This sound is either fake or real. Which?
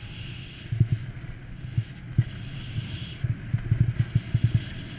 real